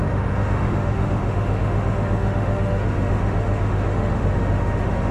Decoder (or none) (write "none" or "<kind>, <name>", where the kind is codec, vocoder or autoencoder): autoencoder, DAC-VAE